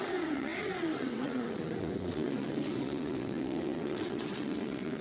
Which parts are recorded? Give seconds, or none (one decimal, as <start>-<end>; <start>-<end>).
none